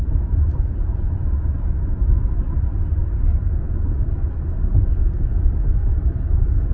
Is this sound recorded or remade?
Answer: remade